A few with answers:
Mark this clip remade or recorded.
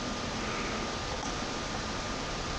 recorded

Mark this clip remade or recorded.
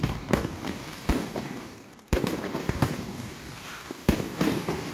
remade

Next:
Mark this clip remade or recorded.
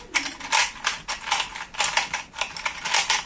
recorded